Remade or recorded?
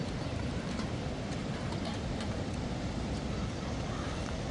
remade